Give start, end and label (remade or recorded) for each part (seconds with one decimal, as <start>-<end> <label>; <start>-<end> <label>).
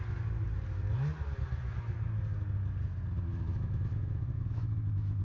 0.0-3.3 recorded; 3.3-5.2 remade